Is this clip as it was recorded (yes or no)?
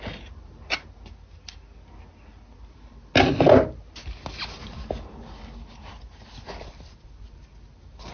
yes